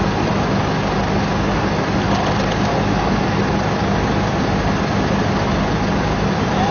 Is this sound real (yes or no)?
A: yes